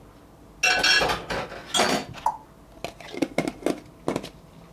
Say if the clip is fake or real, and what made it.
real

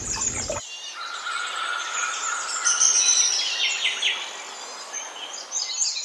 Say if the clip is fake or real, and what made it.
real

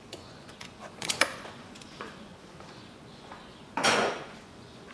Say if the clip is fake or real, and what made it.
fake, vocoder, Vocos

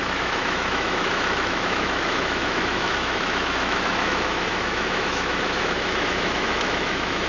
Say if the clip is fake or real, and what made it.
fake, autoencoder, DAC-VAE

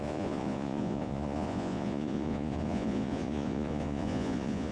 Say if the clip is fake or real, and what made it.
fake, vocoder, Vocos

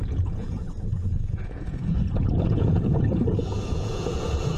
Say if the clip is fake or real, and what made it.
fake, vocoder, Vocos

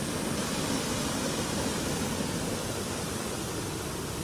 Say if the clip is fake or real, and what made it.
real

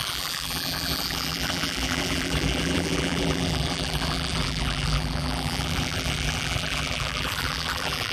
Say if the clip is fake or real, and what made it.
fake, vocoder, BigVGAN v2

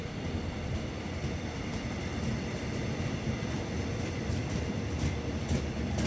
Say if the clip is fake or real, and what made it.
fake, vocoder, BigVGAN v2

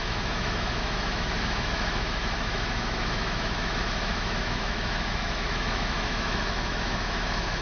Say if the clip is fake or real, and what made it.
fake, autoencoder, DAC-VAE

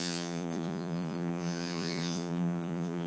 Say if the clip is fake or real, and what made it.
fake, vocoder, Vocos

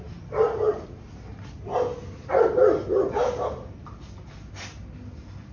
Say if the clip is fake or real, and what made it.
real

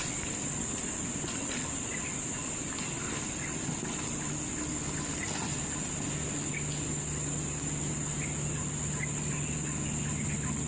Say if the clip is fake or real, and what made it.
real